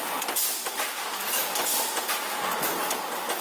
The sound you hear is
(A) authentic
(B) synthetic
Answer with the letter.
A